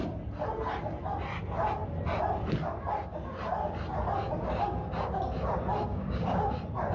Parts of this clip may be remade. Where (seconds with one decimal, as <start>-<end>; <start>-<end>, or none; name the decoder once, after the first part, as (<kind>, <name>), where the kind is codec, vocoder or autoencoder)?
5.9-6.5 (codec, DAC)